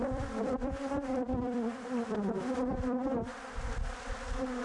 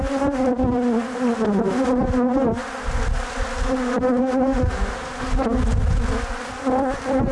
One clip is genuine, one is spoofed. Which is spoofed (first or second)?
first